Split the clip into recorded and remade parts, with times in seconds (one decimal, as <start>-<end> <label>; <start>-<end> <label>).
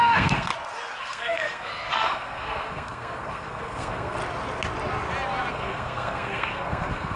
0.0-0.5 remade; 0.5-1.0 recorded; 1.0-4.2 remade; 4.2-5.5 recorded; 5.5-7.2 remade